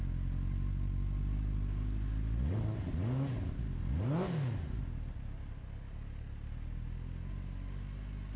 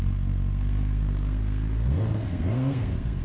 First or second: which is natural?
first